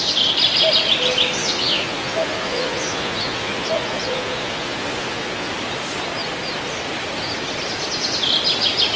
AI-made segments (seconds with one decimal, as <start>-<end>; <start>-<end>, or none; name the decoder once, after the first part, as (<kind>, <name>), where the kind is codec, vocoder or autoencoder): 1.4-5.5 (vocoder, Vocos)